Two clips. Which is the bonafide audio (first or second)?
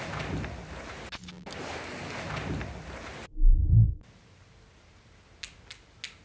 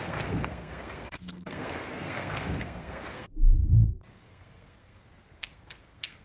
first